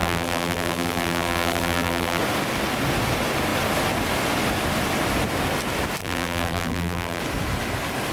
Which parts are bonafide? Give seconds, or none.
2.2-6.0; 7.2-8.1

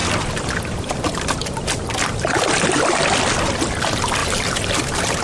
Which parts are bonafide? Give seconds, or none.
1.6-5.2